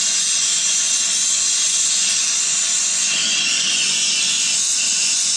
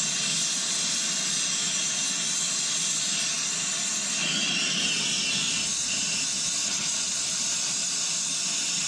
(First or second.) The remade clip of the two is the first